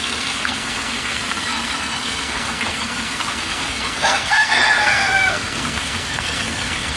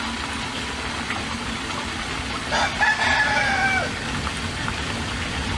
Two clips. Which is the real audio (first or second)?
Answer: second